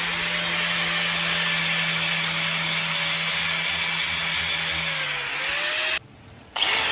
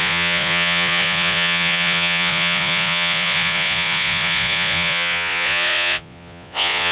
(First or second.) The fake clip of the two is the second